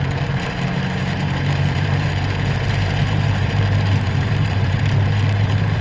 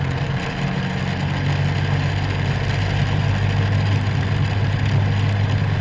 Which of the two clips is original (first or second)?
second